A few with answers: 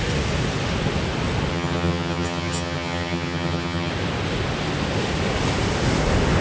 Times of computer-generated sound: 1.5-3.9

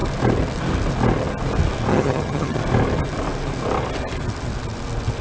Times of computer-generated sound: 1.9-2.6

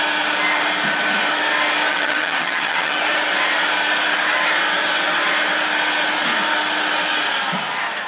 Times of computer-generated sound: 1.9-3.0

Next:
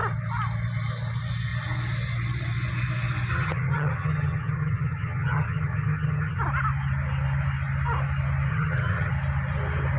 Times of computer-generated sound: 3.3-6.4; 8.5-9.1

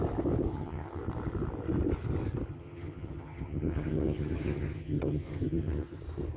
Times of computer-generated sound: 0.5-1.0; 2.5-6.0